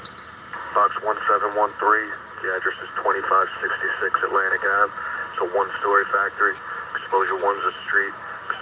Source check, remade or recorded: recorded